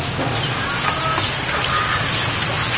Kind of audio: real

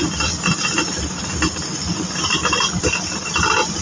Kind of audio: real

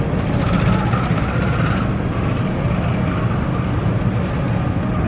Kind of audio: real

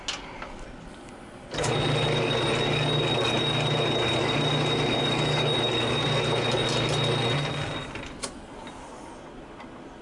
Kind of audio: real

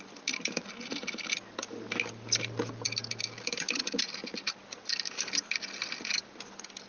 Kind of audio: real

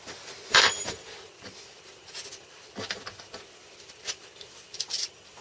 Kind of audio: fake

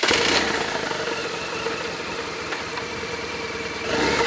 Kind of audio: real